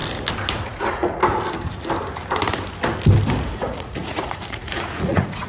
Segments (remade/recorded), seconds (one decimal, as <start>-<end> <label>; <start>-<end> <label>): 0.0-0.5 recorded; 0.5-1.2 remade; 1.2-3.4 recorded; 3.4-5.5 remade